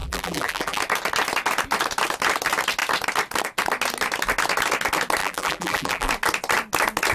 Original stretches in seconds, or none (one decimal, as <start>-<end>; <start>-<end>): 0.8-5.2; 6.1-7.1